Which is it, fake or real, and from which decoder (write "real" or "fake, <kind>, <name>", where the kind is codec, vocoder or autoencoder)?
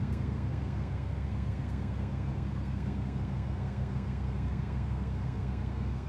fake, codec, SNAC